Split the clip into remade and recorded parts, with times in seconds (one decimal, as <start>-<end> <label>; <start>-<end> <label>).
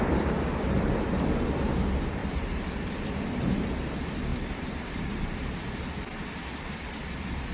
0.0-2.2 recorded; 2.2-2.9 remade; 2.9-4.3 recorded; 4.3-5.8 remade; 5.8-7.5 recorded